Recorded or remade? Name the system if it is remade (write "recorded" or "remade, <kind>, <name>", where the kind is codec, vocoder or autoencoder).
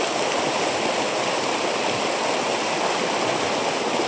recorded